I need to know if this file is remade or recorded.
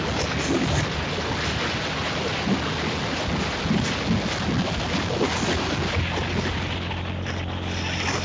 recorded